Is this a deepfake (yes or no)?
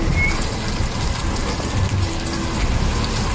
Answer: no